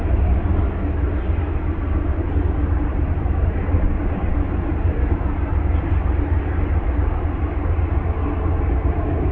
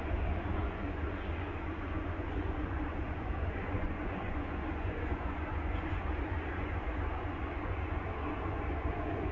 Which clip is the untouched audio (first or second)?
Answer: first